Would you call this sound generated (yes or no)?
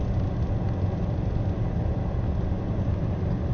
no